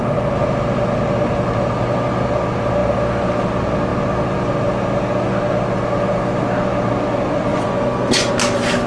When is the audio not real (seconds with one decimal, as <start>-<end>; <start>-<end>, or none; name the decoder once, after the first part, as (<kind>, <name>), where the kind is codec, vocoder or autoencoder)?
7.5-8.3 (vocoder, Vocos)